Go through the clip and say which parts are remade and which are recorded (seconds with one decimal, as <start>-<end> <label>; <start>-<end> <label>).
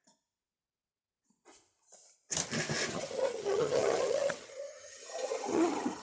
0.0-2.9 recorded; 2.9-6.0 remade